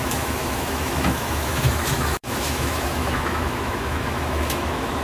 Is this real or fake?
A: fake